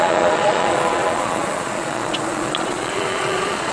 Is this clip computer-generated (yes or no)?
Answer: yes